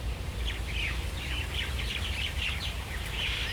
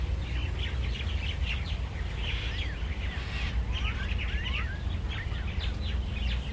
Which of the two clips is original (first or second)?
second